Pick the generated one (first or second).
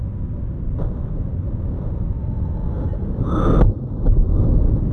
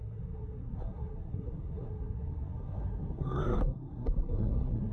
second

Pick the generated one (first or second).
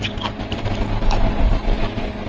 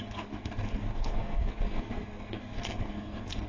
second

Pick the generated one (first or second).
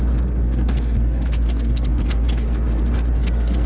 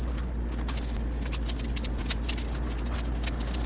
first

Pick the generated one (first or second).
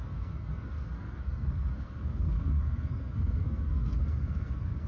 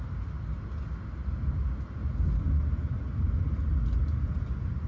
first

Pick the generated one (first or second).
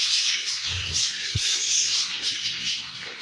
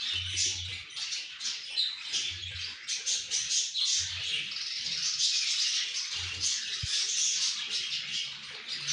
first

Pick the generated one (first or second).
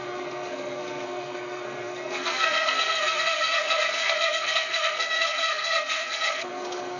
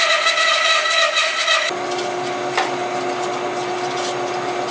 first